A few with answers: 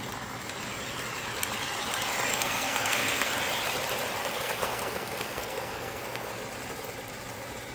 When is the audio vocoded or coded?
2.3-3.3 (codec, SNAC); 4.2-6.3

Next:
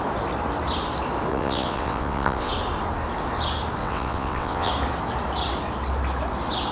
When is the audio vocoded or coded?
1.3-2.5 (vocoder, WaveNeXt); 3.8-4.7

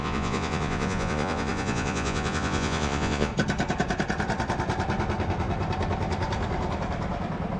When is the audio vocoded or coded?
0.0-3.3 (vocoder, Vocos)

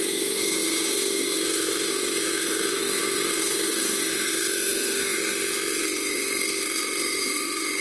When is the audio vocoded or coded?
0.0-7.8 (autoencoder, DAC-VAE)

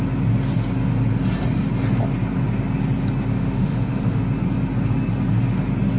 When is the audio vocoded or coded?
3.3-4.2 (autoencoder, DAC-VAE)

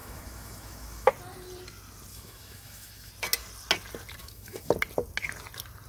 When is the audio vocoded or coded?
0.0-1.1 (autoencoder, DAC-VAE); 2.1-3.1; 4.2-4.7

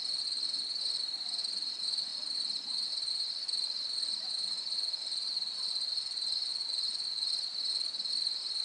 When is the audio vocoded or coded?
none

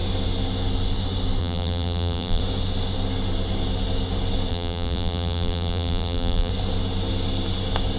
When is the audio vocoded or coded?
1.4-2.4 (vocoder, BigVGAN v2); 4.5-6.5